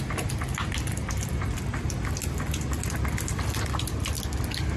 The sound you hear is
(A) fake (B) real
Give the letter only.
B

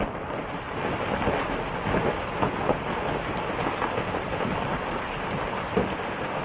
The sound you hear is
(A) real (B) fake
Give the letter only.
A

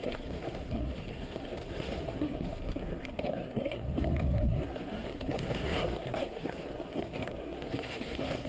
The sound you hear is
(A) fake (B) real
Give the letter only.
A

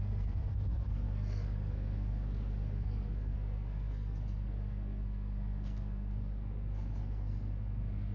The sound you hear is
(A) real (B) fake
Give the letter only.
B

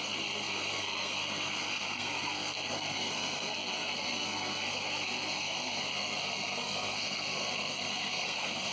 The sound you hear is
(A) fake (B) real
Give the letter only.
A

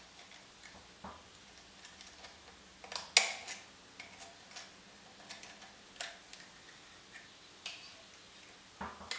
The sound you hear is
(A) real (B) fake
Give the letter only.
A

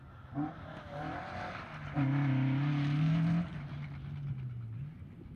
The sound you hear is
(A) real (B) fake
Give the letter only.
A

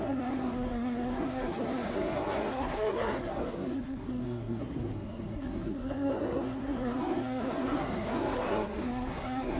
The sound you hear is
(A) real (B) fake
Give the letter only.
B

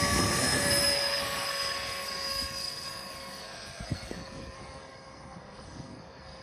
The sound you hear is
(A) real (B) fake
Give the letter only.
B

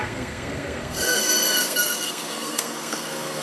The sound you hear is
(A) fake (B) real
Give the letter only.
A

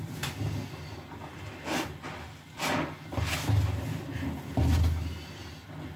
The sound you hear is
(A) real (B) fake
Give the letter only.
A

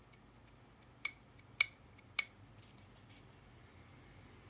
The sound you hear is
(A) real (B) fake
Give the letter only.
A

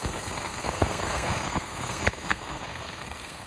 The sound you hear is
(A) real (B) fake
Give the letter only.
B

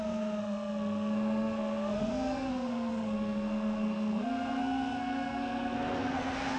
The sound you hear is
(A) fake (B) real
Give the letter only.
A